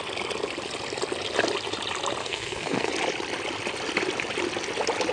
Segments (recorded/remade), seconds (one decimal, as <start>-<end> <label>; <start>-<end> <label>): 0.0-2.2 recorded; 2.2-2.9 remade; 2.9-5.1 recorded